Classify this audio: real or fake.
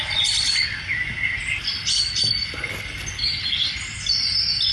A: real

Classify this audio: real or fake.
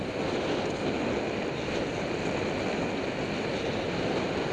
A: real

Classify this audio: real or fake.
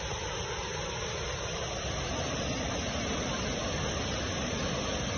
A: real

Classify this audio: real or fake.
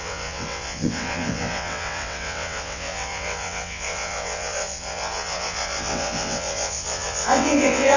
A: fake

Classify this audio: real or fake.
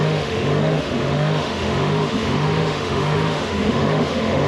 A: fake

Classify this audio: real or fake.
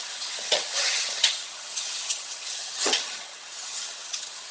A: fake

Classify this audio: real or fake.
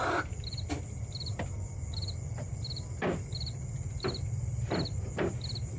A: real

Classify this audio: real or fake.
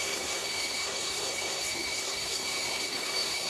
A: fake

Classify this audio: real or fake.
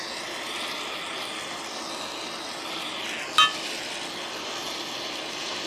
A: real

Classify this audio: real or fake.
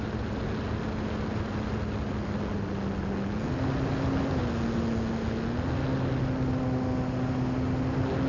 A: real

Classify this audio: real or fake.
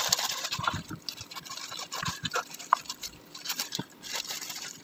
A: fake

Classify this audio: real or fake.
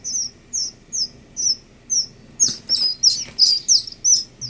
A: real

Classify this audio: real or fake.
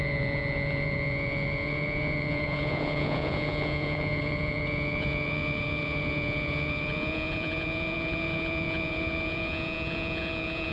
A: fake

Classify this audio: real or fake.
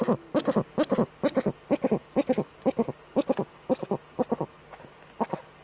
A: real